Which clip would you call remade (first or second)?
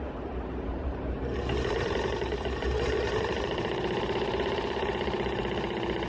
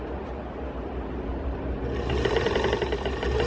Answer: first